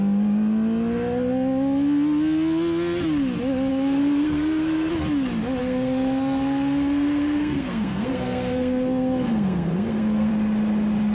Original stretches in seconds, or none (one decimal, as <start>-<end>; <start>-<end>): 0.0-3.7; 4.9-5.6; 10.3-11.1